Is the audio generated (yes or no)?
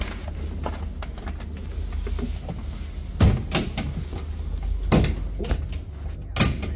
no